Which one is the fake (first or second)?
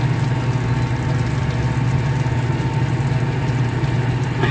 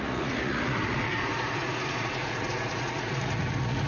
second